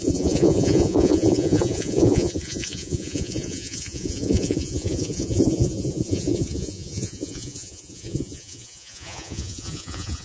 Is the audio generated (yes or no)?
yes